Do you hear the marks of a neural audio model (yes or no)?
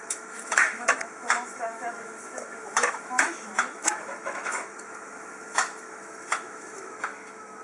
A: yes